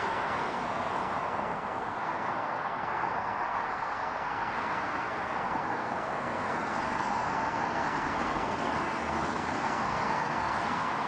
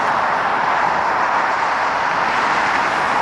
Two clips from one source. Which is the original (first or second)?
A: second